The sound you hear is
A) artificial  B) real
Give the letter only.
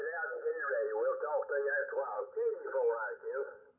B